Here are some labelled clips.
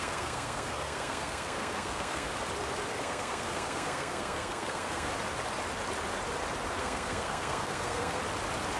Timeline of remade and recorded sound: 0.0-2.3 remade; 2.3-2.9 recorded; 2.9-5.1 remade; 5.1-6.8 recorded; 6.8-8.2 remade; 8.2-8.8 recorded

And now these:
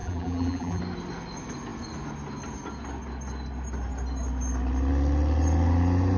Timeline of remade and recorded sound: 0.0-0.8 remade; 0.8-6.2 recorded

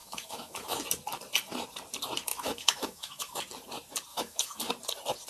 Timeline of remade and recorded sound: 0.0-0.8 remade; 0.8-2.3 recorded; 2.3-3.4 remade; 3.4-4.1 recorded; 4.1-4.6 remade; 4.6-5.3 recorded